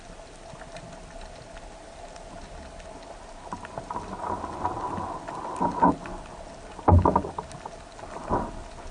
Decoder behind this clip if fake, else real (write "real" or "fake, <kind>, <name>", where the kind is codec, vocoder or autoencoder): real